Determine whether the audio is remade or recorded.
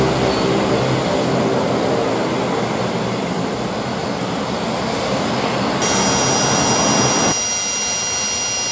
recorded